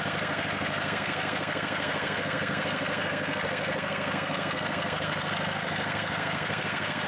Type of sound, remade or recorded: remade